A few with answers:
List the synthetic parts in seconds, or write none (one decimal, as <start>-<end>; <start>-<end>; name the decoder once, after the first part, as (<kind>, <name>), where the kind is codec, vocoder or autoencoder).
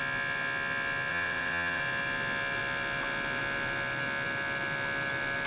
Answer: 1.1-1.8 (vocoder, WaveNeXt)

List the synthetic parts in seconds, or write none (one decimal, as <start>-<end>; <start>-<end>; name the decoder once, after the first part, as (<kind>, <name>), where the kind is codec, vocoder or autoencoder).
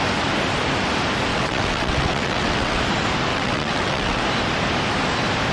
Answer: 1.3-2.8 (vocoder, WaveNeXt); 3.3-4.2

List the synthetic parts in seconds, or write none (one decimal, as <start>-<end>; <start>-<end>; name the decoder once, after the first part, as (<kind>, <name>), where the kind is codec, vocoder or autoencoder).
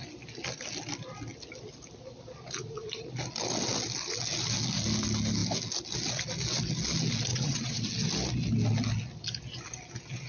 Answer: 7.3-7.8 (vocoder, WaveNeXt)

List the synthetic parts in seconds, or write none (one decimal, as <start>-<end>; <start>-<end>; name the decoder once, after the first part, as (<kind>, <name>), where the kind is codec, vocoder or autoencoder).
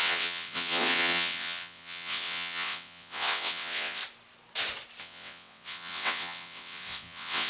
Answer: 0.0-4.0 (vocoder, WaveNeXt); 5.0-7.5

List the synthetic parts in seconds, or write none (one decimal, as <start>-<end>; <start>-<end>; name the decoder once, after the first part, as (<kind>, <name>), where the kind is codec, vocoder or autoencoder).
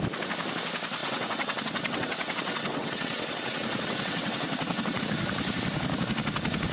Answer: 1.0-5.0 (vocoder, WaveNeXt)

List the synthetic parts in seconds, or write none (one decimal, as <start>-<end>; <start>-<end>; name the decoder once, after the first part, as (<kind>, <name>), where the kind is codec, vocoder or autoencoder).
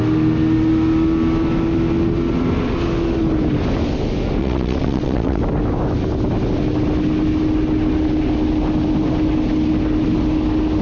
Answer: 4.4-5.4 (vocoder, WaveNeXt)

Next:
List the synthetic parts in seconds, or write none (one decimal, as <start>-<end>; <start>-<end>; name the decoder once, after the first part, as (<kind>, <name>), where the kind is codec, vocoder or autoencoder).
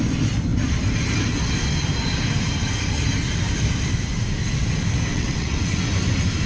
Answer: 5.1-5.8 (vocoder, WaveNeXt)